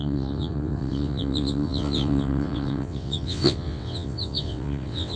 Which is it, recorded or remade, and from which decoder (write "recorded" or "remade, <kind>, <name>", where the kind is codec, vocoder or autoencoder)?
remade, vocoder, WaveNeXt